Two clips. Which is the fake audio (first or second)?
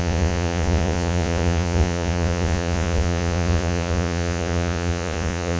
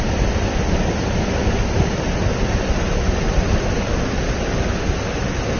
first